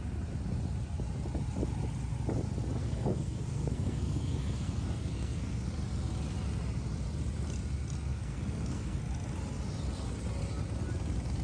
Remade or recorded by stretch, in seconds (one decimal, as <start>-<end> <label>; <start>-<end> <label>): 0.0-2.8 recorded; 2.8-5.7 remade; 5.7-8.1 recorded; 8.1-9.0 remade; 9.0-11.4 recorded